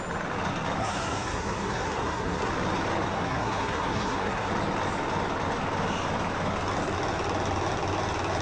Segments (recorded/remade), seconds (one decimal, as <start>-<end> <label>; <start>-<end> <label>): 0.0-0.8 recorded; 0.8-2.5 remade; 2.5-3.1 recorded; 3.1-4.5 remade; 4.5-8.4 recorded